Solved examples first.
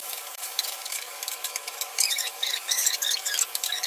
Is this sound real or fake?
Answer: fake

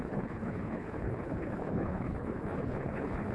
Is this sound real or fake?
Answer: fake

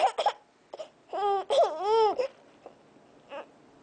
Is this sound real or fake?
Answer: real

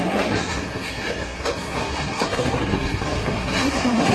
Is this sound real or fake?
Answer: fake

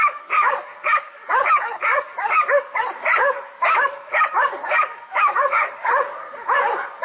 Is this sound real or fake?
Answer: fake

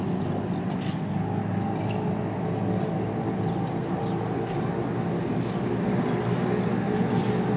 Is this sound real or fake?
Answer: real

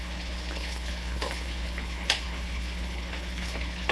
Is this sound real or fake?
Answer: fake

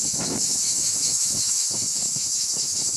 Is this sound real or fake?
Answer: fake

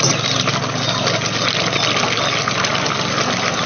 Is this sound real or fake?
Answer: real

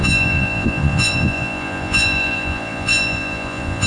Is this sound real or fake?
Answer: fake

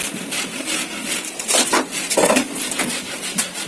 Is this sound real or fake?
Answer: real